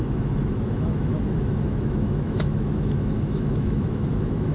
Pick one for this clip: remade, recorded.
remade